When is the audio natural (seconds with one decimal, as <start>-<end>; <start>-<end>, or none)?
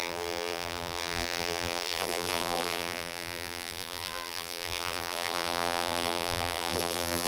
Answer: none